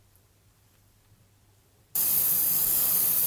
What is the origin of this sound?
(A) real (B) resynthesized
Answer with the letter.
B